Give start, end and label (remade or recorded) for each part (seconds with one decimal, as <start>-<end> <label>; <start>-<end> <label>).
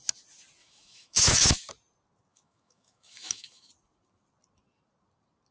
0.0-0.6 recorded; 0.6-1.7 remade; 1.7-2.3 recorded; 2.3-3.7 remade; 3.7-5.5 recorded